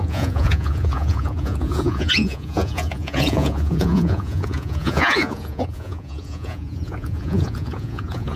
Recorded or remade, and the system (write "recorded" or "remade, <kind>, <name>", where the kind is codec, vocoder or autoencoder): remade, vocoder, Vocos